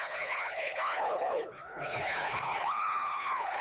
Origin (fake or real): fake